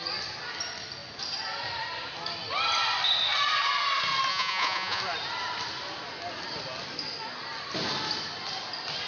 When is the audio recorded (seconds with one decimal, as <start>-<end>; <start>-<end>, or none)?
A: 0.0-4.3; 5.0-9.1